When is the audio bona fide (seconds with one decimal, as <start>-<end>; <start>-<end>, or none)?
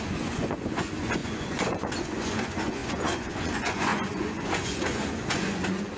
none